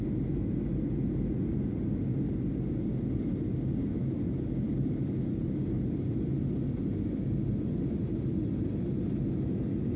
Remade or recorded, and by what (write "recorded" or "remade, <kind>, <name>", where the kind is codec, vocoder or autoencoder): recorded